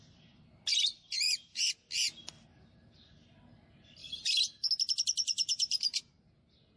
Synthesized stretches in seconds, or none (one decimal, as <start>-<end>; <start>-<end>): 0.7-1.7; 4.0-4.7; 5.2-6.1